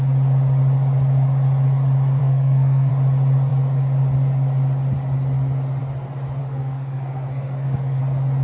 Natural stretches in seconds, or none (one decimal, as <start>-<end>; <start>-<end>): 0.0-2.2; 2.9-6.4; 8.0-8.4